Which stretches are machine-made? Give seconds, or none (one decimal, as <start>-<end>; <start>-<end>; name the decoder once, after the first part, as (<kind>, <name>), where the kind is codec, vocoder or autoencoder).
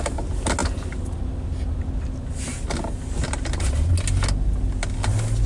none